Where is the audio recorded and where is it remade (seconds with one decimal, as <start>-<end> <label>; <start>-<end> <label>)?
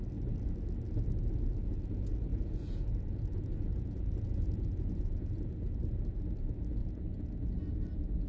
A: 0.0-2.3 recorded; 2.3-5.4 remade; 5.4-6.8 recorded; 6.8-7.6 remade; 7.6-8.3 recorded